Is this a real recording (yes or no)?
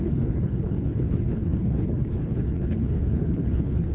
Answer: no